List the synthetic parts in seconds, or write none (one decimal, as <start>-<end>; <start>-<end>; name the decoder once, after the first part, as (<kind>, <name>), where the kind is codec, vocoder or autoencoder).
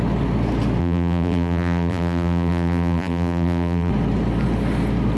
0.8-3.9 (vocoder, BigVGAN v2)